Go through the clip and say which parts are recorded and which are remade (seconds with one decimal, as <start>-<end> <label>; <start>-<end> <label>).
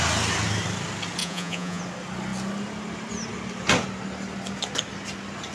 0.0-1.2 recorded; 1.2-1.8 remade; 1.8-5.5 recorded